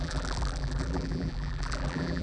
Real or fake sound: fake